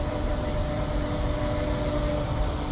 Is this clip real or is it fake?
real